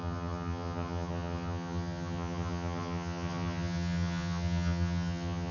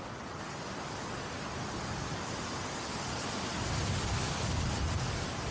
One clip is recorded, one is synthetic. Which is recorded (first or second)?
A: second